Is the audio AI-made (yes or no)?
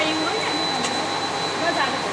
no